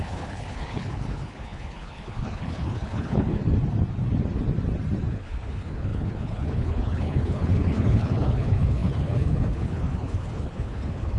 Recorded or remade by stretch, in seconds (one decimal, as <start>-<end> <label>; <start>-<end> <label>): 0.0-3.4 remade; 3.4-5.1 recorded; 5.1-11.2 remade